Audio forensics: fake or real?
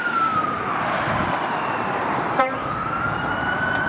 fake